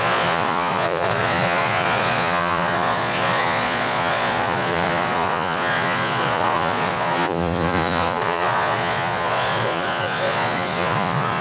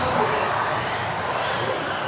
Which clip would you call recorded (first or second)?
second